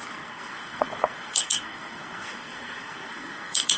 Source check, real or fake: fake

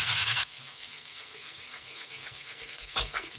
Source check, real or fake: fake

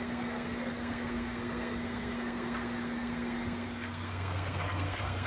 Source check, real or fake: fake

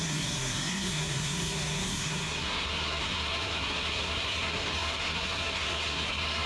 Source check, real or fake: fake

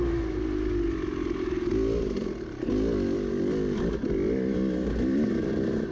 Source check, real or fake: real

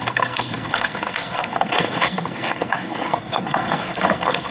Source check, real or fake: fake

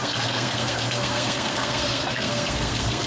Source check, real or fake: fake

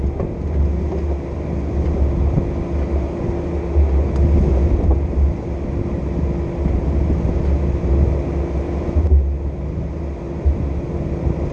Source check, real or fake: real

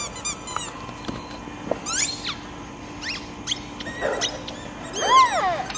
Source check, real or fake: real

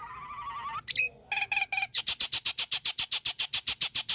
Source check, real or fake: real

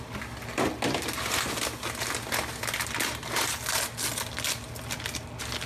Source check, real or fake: real